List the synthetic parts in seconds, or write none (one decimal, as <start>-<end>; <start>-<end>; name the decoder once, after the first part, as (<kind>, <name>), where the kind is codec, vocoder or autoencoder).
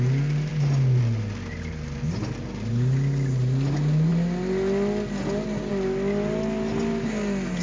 none